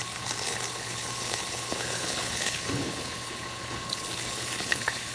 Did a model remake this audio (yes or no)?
yes